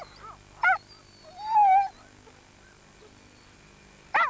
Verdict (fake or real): real